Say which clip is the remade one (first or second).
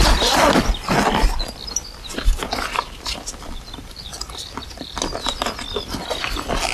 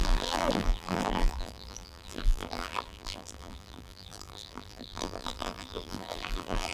second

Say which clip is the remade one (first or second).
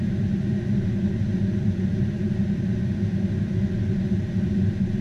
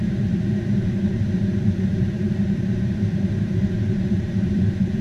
second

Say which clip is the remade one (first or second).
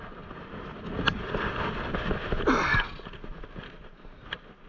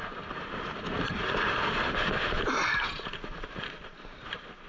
second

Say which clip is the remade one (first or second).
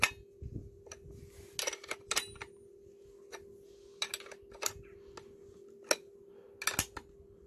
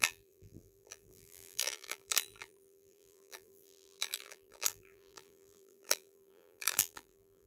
second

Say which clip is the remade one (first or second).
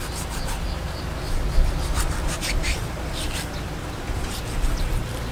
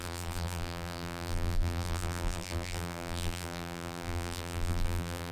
second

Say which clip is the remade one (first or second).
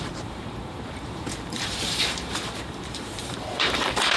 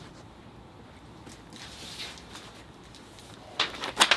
first